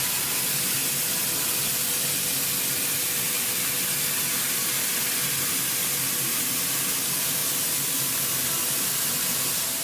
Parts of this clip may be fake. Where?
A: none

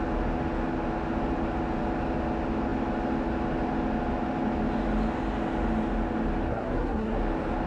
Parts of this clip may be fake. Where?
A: 6.5-7.2 (codec, SNAC)

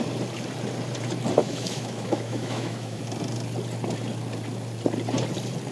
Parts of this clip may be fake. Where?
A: 1.4-3.0 (autoencoder, DAC-VAE)

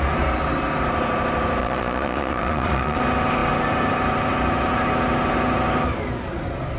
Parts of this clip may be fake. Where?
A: 1.6-3.0 (vocoder, Vocos)

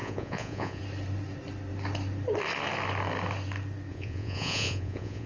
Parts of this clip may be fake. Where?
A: 0.0-0.8 (vocoder, Vocos); 3.9-5.3

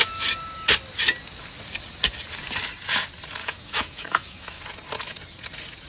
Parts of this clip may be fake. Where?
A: 3.4-4.6 (autoencoder, DAC-VAE)

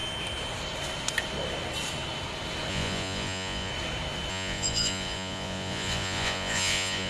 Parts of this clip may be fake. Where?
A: 2.7-3.7 (vocoder, Vocos); 4.3-7.1

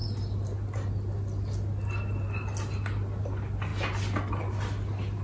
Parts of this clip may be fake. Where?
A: none